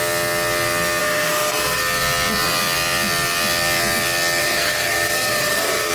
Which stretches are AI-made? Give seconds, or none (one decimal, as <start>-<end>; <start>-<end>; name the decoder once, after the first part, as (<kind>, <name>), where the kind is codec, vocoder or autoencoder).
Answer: 1.0-1.8 (codec, SNAC); 4.4-5.9